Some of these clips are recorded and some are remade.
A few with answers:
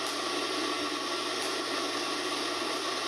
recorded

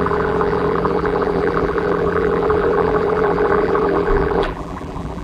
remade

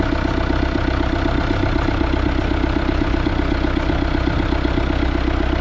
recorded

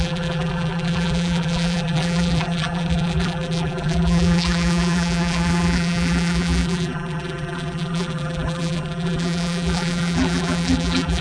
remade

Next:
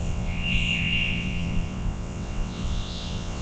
remade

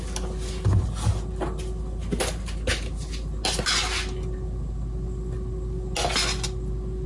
recorded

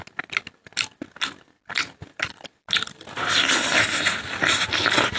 recorded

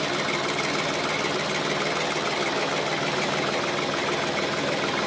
recorded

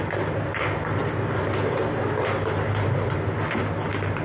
recorded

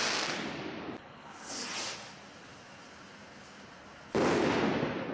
recorded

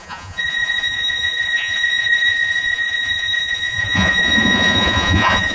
remade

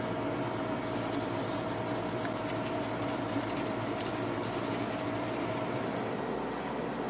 recorded